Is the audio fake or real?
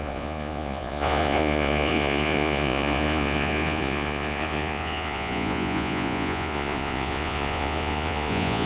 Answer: fake